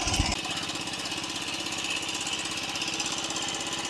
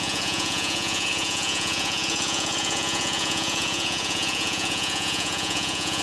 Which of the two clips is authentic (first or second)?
first